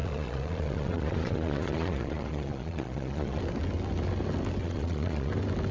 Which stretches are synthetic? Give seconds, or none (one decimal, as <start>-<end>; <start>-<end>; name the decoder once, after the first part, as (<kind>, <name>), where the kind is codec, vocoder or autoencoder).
0.0-3.4 (vocoder, Vocos); 4.6-5.3